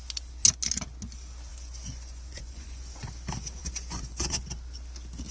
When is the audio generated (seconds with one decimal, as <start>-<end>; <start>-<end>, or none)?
1.5-3.1; 3.6-4.4